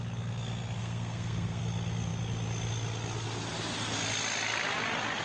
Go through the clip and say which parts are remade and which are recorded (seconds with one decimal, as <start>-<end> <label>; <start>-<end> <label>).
0.0-0.8 recorded; 0.8-1.6 remade; 1.6-5.2 recorded